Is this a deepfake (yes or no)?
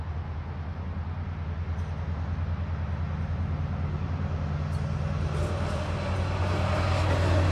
no